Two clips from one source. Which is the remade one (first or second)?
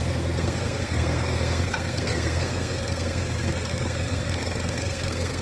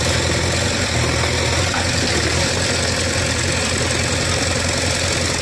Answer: first